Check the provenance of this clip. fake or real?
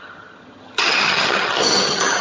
fake